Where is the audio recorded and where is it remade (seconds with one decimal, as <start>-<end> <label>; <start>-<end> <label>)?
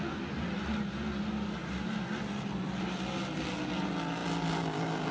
0.0-5.1 recorded